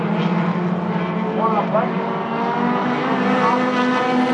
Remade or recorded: recorded